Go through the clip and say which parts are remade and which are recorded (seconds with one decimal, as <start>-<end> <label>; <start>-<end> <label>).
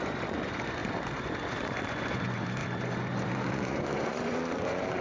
0.0-5.0 remade